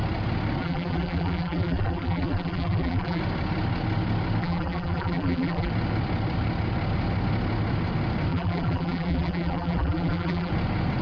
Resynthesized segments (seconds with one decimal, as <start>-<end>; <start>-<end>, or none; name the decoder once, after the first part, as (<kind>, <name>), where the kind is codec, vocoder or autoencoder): 0.6-3.2 (vocoder, BigVGAN v2); 4.4-5.7; 8.3-10.5